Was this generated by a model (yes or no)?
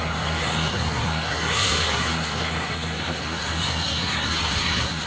yes